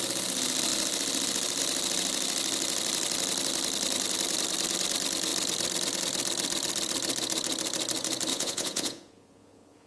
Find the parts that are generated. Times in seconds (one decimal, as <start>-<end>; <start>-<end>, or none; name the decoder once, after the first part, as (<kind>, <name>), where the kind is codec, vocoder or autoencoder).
8.3-9.9 (vocoder, Vocos)